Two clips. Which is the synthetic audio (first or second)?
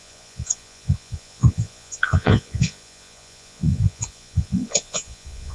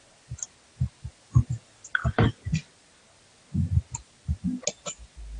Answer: first